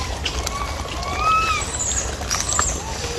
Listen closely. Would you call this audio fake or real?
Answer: real